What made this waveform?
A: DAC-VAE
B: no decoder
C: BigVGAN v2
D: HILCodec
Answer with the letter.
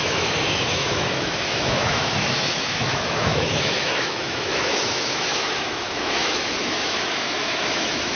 A